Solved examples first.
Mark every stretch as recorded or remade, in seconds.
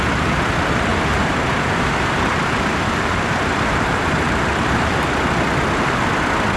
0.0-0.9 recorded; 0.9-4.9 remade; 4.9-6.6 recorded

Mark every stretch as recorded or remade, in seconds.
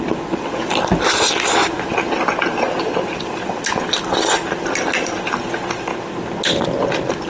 0.0-1.6 recorded; 1.6-4.0 remade; 4.0-7.3 recorded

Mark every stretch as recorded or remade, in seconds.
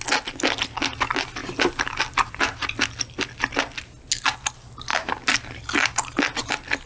0.0-1.4 recorded; 1.4-2.7 remade; 2.7-4.9 recorded; 4.9-6.5 remade; 6.5-6.9 recorded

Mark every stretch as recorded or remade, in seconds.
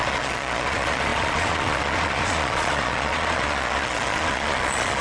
0.0-5.0 remade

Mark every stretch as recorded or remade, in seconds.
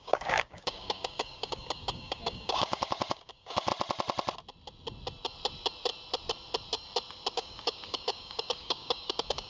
0.0-3.7 remade; 3.7-7.3 recorded; 7.3-9.5 remade